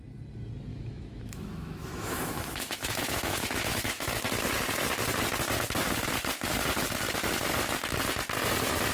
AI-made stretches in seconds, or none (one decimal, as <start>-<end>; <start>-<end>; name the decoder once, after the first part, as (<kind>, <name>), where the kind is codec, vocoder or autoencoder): 0.7-4.2 (autoencoder, DAC-VAE)